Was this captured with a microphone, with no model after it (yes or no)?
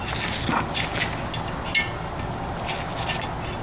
yes